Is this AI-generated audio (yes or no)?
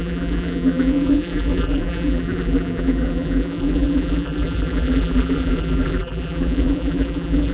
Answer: yes